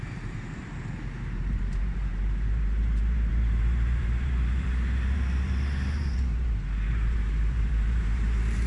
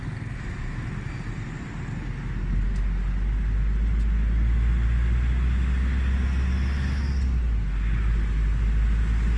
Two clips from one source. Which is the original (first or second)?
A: second